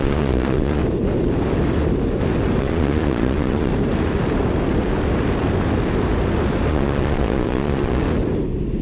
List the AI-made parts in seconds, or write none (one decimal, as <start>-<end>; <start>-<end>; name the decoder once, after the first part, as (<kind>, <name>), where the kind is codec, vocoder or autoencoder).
0.0-0.8 (vocoder, Vocos); 2.6-3.7; 6.7-8.0